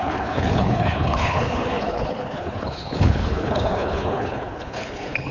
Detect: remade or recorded remade